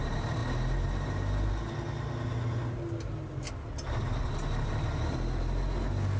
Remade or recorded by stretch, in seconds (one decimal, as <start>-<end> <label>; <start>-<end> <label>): 0.0-6.2 recorded